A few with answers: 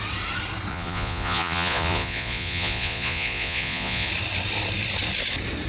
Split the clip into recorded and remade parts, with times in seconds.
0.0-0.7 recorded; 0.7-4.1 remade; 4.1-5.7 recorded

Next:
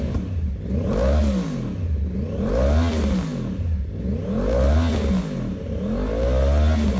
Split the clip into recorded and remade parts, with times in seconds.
0.0-7.0 recorded